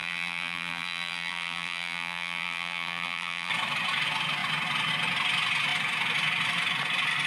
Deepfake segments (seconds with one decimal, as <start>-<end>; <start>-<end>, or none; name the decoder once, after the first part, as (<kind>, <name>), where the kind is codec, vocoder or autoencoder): 0.0-3.5 (vocoder, BigVGAN v2)

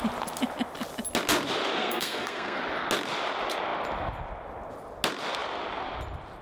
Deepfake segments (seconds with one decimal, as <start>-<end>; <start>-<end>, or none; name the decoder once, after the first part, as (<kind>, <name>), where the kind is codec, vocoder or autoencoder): 1.8-2.6 (codec, SNAC)

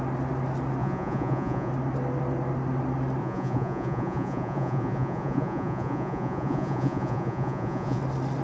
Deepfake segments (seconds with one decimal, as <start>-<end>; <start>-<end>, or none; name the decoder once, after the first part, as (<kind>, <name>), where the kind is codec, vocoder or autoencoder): 0.8-1.7 (vocoder, Vocos); 3.2-8.0

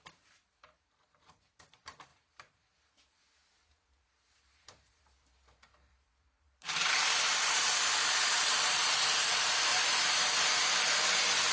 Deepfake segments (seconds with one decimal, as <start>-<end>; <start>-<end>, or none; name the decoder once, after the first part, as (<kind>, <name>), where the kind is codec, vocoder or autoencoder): 0.0-9.7 (vocoder, BigVGAN v2); 10.4-11.5

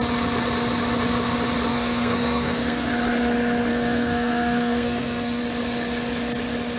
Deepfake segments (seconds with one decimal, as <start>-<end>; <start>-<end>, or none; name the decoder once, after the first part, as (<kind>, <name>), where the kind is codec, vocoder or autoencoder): 1.7-2.9 (codec, SNAC); 3.7-5.4

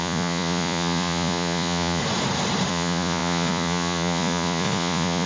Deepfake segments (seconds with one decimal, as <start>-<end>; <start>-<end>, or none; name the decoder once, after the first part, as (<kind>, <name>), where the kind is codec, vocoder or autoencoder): 0.0-2.0 (vocoder, Vocos); 2.7-5.3